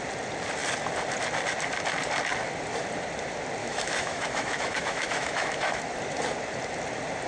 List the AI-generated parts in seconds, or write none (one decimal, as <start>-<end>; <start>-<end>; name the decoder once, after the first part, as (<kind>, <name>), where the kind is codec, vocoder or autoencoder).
3.6-5.8 (autoencoder, DAC-VAE)